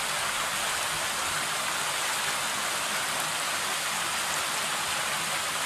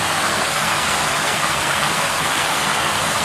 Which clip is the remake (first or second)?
second